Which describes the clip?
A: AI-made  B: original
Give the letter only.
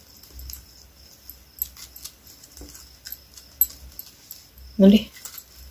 B